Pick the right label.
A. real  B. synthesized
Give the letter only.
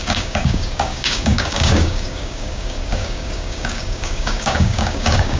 B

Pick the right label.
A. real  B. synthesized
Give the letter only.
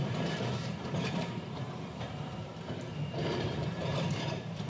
B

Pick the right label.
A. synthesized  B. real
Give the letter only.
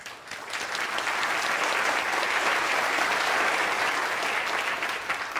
B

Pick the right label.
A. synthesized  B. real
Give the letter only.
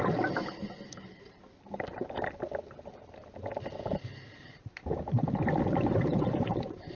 B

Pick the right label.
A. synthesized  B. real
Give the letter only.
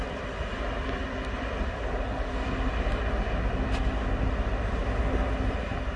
B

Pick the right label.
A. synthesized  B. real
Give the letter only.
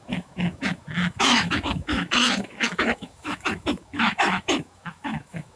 A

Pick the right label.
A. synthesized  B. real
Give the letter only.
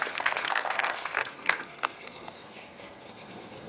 A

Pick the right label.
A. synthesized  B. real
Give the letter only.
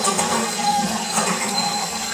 A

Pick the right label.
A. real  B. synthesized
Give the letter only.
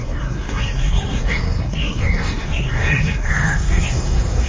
B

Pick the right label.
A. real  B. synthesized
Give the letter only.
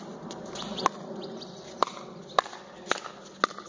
A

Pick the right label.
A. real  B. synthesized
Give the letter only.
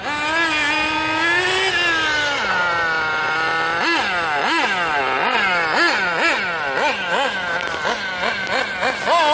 A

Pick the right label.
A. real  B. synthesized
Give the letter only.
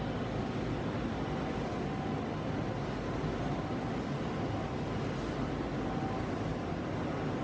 A